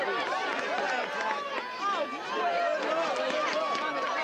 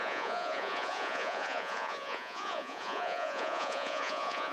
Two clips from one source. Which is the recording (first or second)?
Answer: first